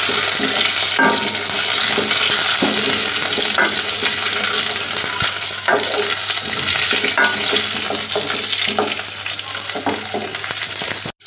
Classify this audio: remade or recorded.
recorded